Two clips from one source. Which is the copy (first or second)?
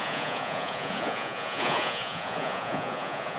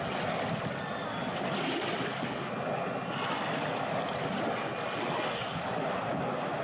first